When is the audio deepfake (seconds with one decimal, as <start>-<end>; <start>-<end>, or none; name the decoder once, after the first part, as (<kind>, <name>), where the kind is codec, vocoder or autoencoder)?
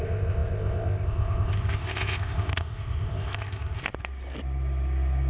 0.0-3.8 (codec, ZipCodec)